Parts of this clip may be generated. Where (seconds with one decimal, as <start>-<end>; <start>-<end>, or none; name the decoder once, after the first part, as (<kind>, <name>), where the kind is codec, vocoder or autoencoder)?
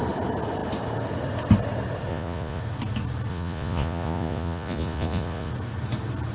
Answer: 2.1-2.6 (vocoder, Vocos); 3.3-5.5